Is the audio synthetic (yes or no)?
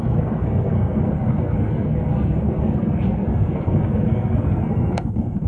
yes